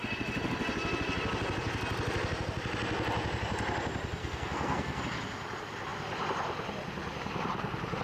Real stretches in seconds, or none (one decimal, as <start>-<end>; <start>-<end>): 0.0-4.2; 5.0-8.0